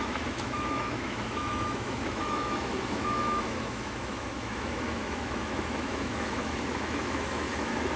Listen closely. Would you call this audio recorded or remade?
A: remade